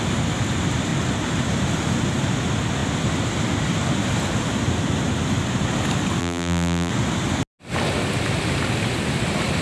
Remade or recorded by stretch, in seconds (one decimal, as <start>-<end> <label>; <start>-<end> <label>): 0.0-6.2 recorded; 6.2-6.9 remade; 6.9-9.6 recorded